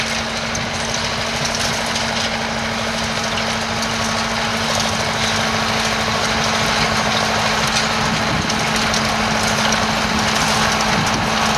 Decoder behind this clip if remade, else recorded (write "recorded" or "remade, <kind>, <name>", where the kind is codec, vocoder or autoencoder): recorded